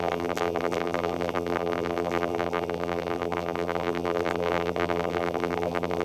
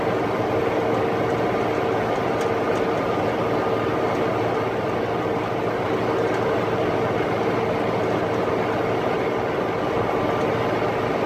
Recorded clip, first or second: second